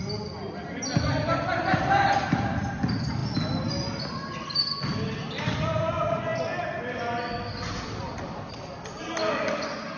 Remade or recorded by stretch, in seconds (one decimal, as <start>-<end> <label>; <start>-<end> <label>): 0.0-10.0 recorded